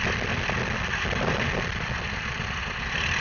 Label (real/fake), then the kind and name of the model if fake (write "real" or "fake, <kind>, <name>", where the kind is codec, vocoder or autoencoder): real